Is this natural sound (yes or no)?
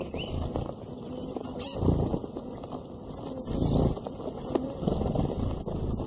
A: yes